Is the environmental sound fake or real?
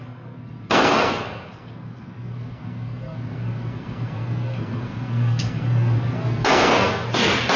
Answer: fake